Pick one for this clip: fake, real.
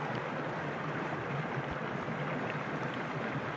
real